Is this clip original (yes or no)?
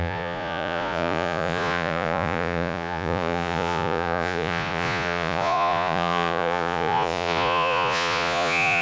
no